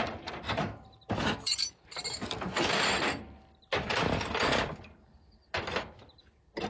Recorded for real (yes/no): yes